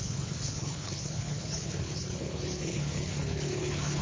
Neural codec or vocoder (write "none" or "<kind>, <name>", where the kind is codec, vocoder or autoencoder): codec, HILCodec